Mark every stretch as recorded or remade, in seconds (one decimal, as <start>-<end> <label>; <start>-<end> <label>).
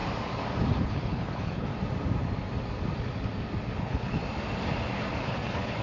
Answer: 0.0-0.8 recorded; 0.8-1.7 remade; 1.7-3.8 recorded; 3.8-4.2 remade; 4.2-5.2 recorded; 5.2-5.8 remade